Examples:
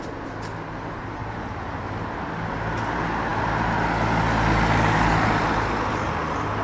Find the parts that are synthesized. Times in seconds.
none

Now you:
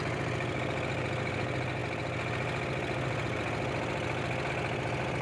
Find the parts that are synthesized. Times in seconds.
none

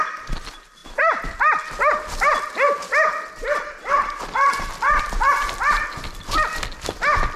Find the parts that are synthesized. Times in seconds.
none